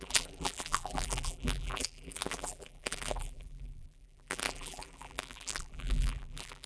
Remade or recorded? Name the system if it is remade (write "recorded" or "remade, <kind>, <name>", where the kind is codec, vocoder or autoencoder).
remade, vocoder, BigVGAN v2